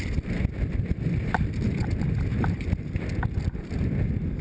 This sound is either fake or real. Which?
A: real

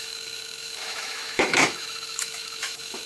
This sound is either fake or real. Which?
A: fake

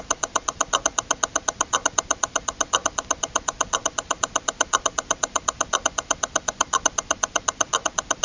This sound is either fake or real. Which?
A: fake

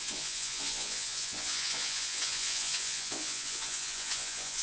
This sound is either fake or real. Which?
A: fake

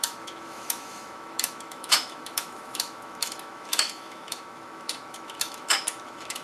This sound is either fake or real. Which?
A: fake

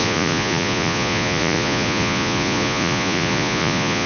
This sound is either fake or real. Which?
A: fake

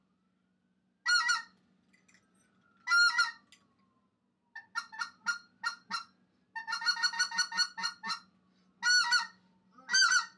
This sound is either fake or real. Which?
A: real